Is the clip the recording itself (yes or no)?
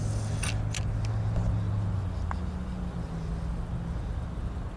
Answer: yes